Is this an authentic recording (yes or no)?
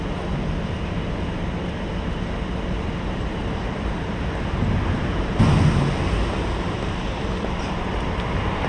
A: yes